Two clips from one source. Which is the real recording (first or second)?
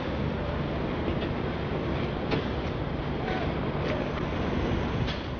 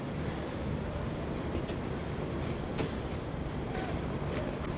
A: first